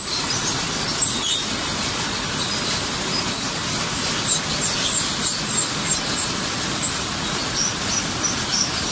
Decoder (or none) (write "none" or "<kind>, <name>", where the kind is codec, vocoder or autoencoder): none